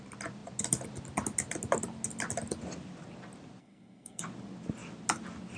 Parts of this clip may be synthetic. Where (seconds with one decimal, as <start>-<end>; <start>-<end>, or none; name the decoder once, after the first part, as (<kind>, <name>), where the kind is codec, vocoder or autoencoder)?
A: 3.6-4.2 (codec, SNAC)